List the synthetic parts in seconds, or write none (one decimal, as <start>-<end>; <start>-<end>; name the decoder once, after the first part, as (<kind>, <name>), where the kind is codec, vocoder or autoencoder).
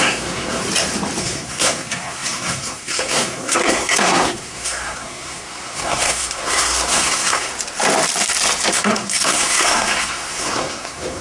0.0-0.6 (codec, SNAC); 1.2-7.5; 8.7-11.2